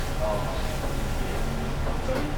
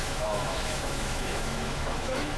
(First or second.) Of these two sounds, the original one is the first